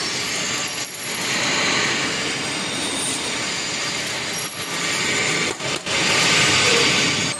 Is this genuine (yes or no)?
yes